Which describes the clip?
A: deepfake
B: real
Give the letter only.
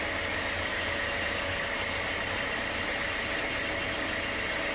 B